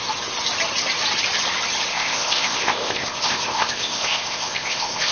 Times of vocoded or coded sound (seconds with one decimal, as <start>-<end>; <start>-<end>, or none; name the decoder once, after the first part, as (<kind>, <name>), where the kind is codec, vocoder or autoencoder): 1.9-5.1 (codec, ZipCodec)